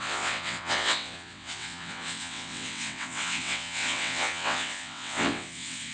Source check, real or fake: fake